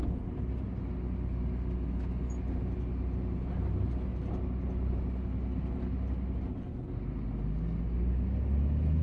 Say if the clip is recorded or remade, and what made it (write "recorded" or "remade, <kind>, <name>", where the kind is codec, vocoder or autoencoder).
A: recorded